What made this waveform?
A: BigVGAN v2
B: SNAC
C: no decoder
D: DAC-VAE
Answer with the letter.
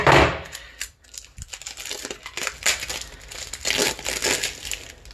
C